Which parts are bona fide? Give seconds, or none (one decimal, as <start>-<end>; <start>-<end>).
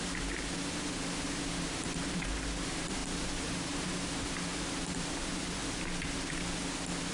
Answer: 5.6-7.1